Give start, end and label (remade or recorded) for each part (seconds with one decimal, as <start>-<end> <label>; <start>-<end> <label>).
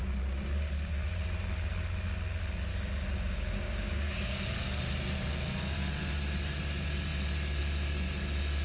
0.0-2.7 recorded; 2.7-4.4 remade; 4.4-8.6 recorded